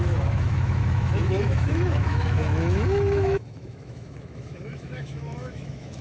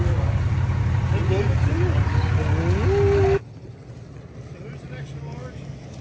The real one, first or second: second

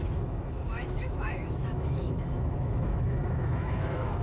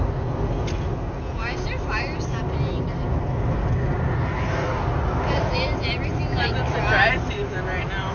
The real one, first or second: second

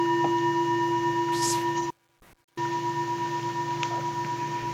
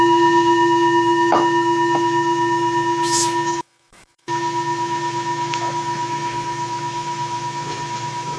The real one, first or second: first